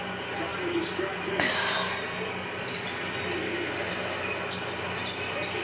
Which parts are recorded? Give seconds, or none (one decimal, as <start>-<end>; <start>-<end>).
0.0-5.6